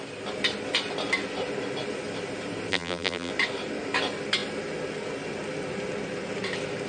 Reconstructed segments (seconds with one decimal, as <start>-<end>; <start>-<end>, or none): 2.7-3.3